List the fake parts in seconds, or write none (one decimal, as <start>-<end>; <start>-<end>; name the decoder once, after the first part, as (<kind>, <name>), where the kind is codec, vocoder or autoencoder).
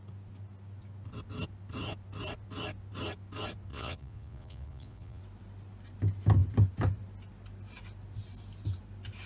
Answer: 3.7-5.2 (vocoder, Vocos)